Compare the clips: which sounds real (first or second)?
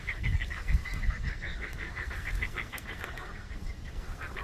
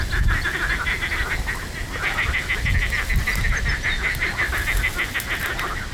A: second